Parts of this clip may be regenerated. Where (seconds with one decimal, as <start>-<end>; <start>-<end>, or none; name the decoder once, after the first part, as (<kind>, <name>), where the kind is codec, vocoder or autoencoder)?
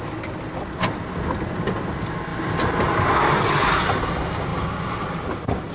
none